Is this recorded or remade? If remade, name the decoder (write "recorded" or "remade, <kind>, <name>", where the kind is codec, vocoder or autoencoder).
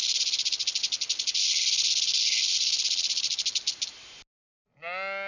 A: recorded